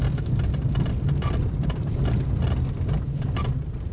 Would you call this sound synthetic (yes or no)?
no